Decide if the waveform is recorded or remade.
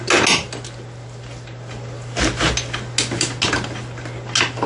recorded